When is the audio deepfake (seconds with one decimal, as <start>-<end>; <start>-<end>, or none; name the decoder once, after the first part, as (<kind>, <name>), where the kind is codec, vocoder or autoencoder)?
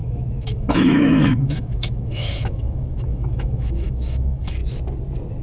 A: 0.0-4.6 (autoencoder, DAC-VAE)